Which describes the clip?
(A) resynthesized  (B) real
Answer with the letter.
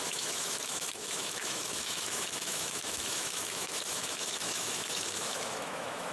A